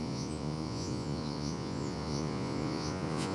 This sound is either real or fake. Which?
fake